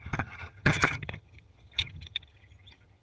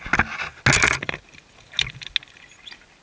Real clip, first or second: second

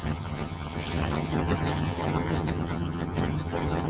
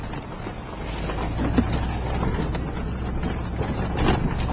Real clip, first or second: second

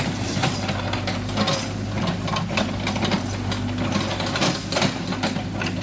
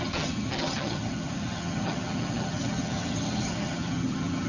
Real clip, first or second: first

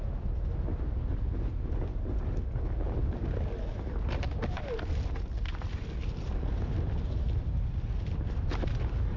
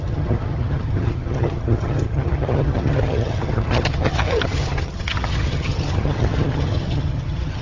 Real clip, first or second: first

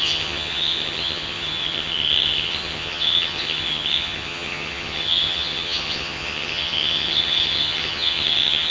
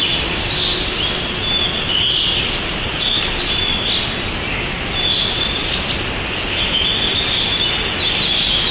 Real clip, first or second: second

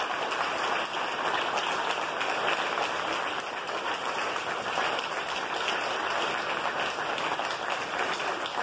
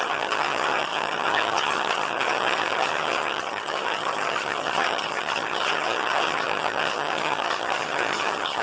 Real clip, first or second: first